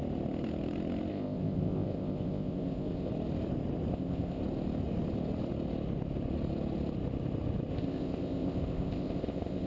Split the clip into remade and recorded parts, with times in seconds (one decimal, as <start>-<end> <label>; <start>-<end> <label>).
0.0-1.1 recorded; 1.1-3.1 remade; 3.1-3.9 recorded; 3.9-4.4 remade; 4.4-7.7 recorded; 7.7-9.7 remade